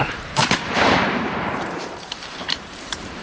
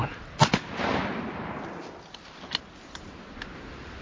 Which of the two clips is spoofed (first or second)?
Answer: first